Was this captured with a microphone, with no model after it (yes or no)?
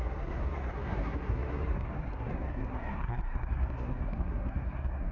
no